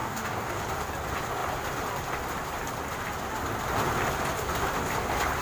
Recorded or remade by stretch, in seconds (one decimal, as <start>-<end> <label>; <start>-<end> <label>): 0.0-0.6 remade; 0.6-5.4 recorded